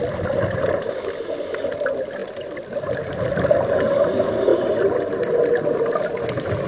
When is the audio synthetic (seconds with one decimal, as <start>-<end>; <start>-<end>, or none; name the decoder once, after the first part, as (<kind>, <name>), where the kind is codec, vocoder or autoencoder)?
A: none

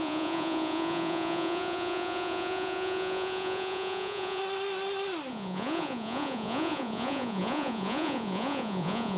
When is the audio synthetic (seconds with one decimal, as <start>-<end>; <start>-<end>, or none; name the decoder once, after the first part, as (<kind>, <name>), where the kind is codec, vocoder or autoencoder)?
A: 0.0-4.4 (vocoder, Vocos); 5.3-9.2

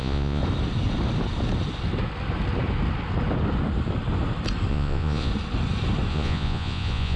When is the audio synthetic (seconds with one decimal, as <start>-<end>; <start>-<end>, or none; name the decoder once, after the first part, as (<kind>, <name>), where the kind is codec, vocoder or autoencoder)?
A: 0.0-0.4 (vocoder, Vocos); 4.7-5.3; 6.1-7.2

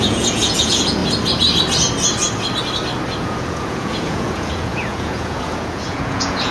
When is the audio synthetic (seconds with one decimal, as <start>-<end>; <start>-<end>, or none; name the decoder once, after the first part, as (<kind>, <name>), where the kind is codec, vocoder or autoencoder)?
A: 0.0-1.0 (vocoder, Vocos); 3.2-6.5